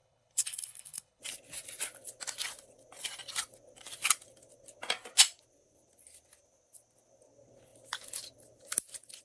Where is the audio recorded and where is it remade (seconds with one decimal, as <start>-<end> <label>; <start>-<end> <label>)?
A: 0.0-1.2 remade; 1.2-9.2 recorded